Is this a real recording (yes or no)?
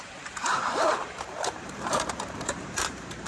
no